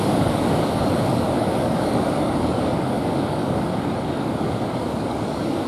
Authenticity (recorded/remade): remade